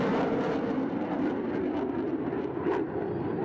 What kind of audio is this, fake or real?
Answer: real